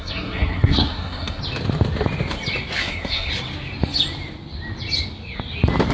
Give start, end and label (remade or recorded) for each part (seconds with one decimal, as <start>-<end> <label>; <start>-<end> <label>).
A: 0.0-1.4 remade; 1.4-2.8 recorded; 2.8-3.3 remade; 3.3-5.9 recorded